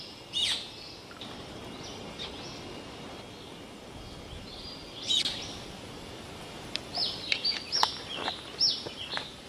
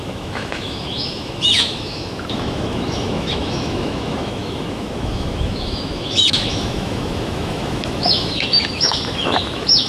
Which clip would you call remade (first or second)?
second